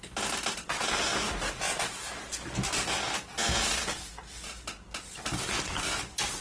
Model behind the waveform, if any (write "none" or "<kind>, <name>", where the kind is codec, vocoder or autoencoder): none